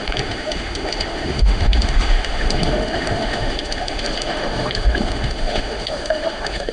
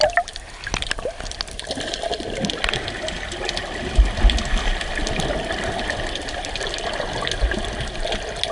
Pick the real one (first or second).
second